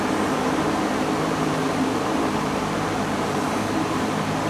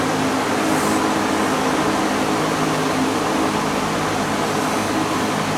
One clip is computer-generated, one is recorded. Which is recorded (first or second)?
second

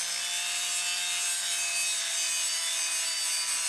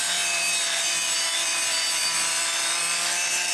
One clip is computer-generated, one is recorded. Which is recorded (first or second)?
first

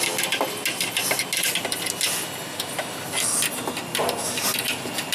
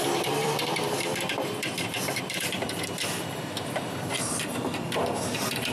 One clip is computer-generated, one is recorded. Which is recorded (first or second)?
first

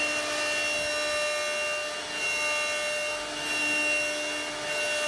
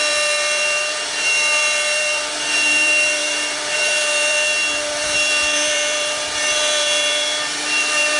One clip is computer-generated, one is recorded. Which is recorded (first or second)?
first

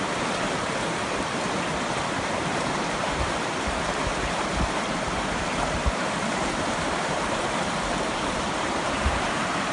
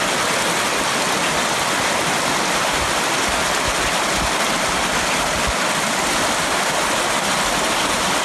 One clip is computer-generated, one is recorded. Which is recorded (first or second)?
second